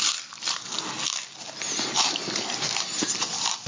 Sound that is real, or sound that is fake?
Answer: real